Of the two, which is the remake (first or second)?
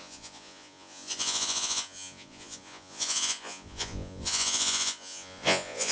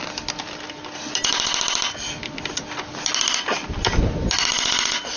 first